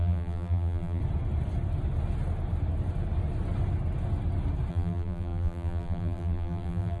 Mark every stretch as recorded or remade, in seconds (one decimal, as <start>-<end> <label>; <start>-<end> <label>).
0.0-1.0 remade; 1.0-4.7 recorded; 4.7-7.0 remade